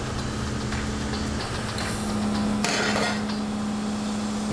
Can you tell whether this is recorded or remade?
recorded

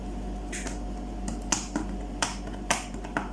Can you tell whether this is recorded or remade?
recorded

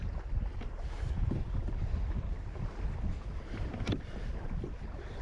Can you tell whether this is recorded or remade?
remade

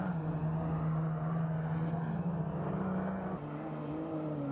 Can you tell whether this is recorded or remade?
recorded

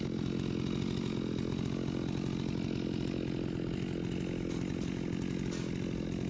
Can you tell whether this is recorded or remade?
recorded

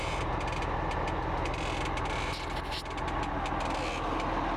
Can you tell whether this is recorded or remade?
recorded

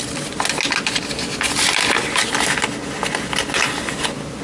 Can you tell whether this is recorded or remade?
recorded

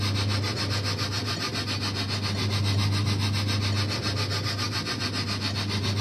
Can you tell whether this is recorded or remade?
recorded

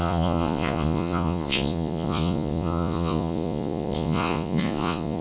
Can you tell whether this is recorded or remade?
remade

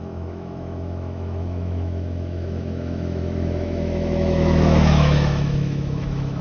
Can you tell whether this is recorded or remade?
remade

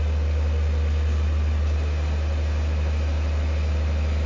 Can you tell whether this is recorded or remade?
recorded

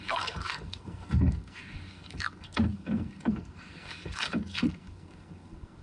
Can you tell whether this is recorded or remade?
remade